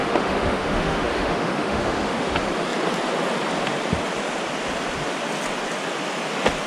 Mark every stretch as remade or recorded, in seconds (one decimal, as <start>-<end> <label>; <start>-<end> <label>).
0.0-2.3 remade; 2.3-6.7 recorded